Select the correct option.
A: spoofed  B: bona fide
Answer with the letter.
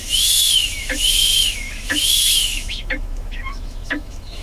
A